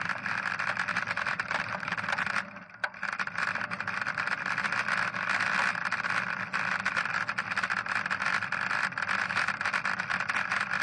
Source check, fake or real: real